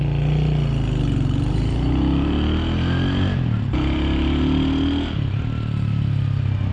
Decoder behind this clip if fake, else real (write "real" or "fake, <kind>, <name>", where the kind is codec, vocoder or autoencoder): real